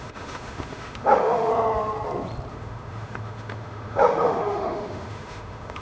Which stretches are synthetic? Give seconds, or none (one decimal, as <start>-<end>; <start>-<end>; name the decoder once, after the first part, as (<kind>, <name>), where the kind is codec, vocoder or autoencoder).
0.0-1.5 (autoencoder, DAC-VAE); 2.5-5.8